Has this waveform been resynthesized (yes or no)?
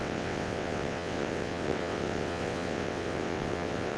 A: yes